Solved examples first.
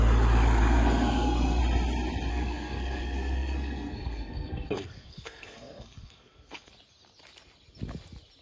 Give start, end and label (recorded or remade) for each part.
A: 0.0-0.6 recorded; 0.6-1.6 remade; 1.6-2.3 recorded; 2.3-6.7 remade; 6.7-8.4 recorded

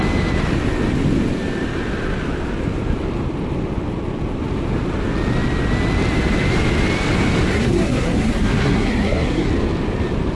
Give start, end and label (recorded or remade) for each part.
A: 0.0-7.5 recorded; 7.5-9.5 remade; 9.5-10.3 recorded